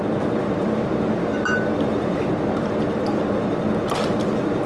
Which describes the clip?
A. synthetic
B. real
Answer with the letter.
B